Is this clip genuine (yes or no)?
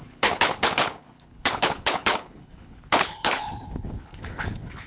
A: no